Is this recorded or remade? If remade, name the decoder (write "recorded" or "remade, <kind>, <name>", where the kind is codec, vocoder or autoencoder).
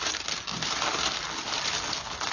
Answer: recorded